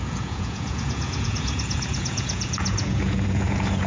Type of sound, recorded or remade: remade